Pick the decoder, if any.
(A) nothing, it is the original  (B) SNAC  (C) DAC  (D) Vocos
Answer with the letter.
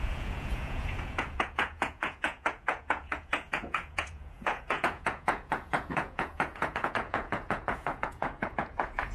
D